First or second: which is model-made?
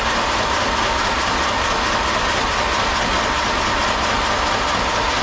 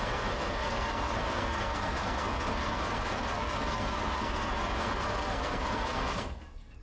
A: second